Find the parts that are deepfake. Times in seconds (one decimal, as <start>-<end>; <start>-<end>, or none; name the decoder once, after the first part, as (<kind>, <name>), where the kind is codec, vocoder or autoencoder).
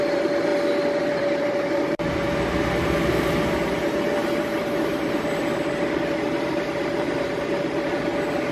0.0-0.5 (vocoder, BigVGAN v2); 1.0-8.5